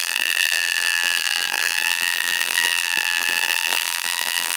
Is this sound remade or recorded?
remade